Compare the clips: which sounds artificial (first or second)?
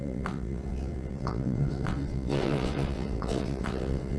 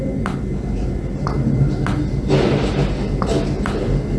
first